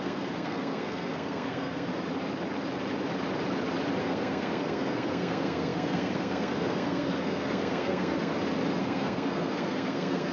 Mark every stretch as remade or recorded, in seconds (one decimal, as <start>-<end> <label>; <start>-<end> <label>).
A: 0.0-1.9 remade; 1.9-4.0 recorded; 4.0-8.3 remade; 8.3-8.8 recorded; 8.8-10.3 remade